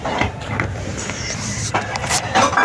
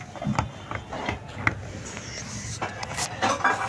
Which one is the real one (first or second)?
second